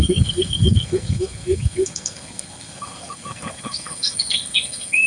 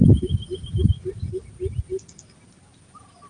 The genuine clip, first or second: second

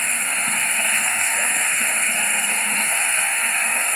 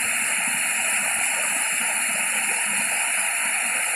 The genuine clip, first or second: second